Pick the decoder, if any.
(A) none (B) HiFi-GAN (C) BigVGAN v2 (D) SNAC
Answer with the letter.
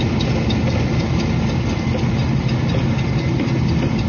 A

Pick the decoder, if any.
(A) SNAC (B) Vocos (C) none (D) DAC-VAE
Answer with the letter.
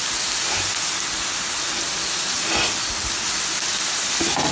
C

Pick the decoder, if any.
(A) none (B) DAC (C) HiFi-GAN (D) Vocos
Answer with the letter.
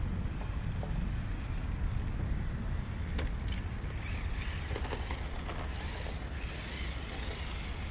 A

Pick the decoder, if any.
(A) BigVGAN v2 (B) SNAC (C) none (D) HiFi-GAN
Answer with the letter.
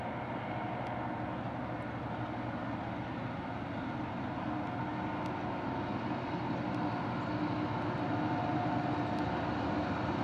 C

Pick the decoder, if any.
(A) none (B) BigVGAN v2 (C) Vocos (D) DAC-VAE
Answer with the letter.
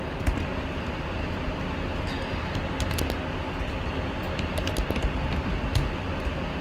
A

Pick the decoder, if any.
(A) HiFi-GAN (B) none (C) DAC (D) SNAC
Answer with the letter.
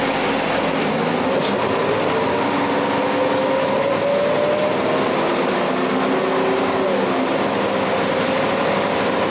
B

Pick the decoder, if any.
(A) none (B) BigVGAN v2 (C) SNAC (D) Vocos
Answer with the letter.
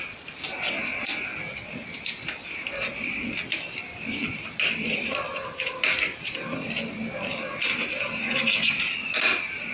A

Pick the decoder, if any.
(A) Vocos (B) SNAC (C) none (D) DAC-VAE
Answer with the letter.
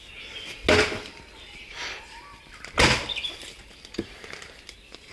C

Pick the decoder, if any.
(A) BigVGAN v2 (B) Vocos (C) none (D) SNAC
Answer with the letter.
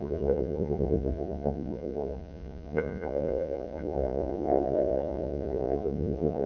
B